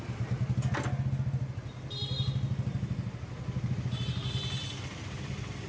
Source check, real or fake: real